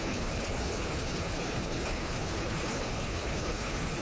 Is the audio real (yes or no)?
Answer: no